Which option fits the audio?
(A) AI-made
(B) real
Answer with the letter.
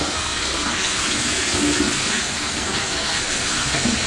A